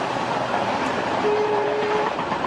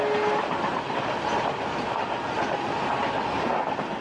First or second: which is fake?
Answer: first